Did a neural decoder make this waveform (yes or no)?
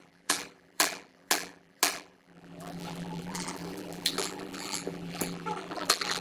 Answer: yes